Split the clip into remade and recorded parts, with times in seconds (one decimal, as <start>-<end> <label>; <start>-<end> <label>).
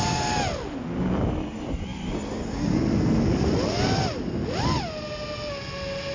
0.0-6.1 recorded